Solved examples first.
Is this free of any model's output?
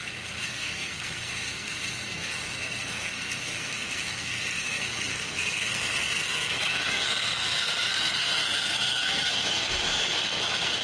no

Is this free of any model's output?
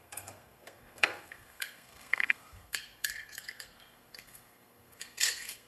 no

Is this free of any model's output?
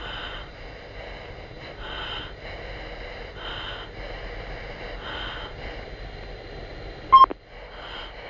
yes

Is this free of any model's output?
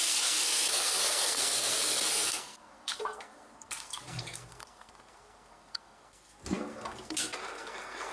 no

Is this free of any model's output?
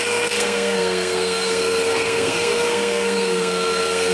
no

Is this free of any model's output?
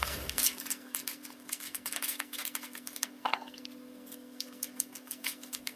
no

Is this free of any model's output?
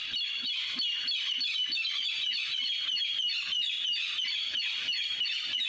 yes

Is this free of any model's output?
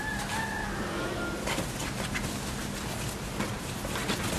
yes